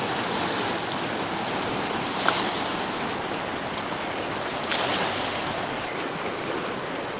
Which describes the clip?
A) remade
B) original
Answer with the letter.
B